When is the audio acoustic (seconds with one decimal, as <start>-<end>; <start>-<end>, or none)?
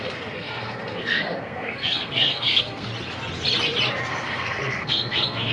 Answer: 2.9-4.1